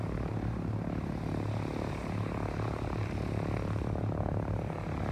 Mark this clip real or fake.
fake